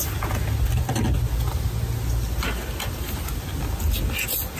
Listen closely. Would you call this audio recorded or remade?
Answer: recorded